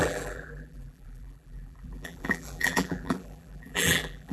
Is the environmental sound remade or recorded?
remade